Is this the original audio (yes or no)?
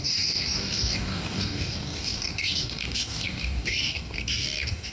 no